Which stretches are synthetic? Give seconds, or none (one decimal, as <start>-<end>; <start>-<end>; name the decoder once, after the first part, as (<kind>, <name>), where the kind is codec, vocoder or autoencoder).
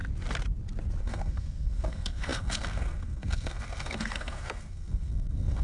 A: 1.0-5.6 (codec, SNAC)